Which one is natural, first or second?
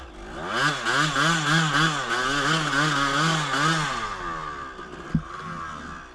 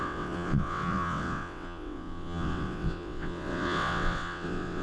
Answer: first